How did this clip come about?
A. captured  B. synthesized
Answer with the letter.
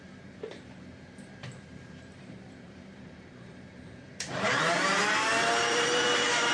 B